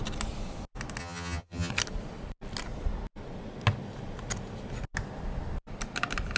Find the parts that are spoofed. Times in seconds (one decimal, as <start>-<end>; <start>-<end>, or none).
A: 1.0-1.7